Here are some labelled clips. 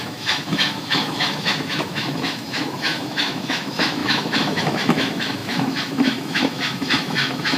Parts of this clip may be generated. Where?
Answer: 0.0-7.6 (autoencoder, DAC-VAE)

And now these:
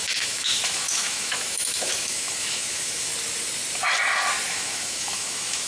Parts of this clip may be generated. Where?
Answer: 0.0-3.1 (autoencoder, DAC-VAE); 4.5-5.7

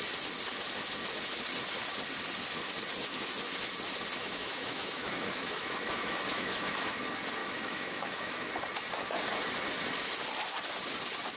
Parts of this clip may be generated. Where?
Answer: 4.2-7.0 (autoencoder, DAC-VAE); 7.4-8.5

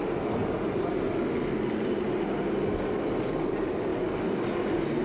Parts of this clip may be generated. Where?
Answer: none

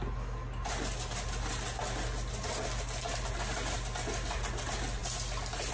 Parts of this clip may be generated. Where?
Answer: none

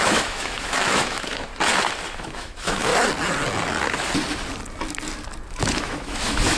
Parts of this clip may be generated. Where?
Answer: 0.0-1.5 (autoencoder, DAC-VAE); 2.1-2.9; 5.5-6.6

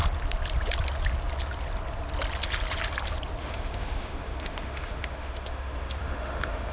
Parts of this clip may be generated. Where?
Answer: 3.4-6.7 (autoencoder, DAC-VAE)